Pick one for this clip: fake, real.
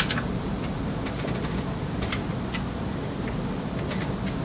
real